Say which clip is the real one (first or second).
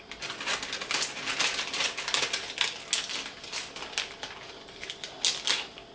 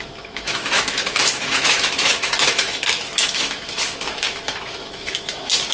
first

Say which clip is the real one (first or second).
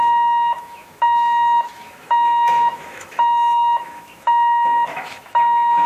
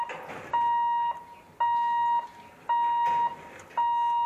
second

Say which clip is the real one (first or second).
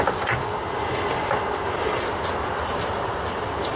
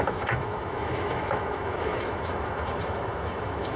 first